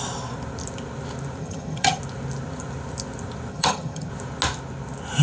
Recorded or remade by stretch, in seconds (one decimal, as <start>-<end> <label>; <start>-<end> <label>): 0.0-1.4 recorded; 1.4-2.0 remade; 2.0-3.5 recorded; 3.5-4.1 remade; 4.1-5.2 recorded